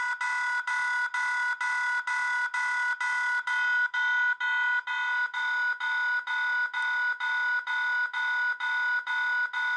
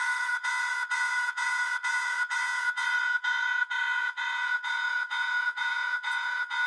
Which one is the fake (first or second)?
second